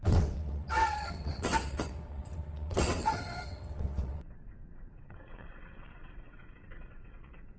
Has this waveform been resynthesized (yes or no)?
yes